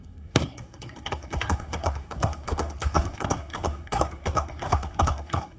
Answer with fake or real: fake